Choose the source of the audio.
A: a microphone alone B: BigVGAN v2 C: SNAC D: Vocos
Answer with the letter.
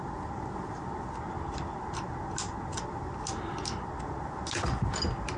A